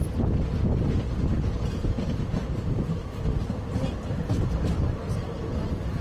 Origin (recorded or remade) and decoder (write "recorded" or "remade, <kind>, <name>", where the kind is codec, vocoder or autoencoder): recorded